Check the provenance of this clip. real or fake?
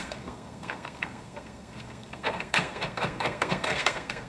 fake